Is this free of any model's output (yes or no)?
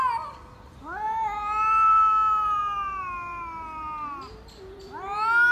yes